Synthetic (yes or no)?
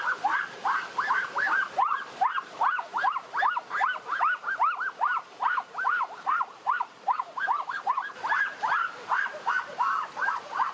yes